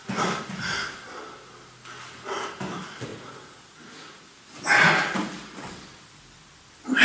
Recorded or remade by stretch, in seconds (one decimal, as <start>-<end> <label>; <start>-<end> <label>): 0.0-3.1 recorded; 3.1-4.2 remade; 4.2-7.0 recorded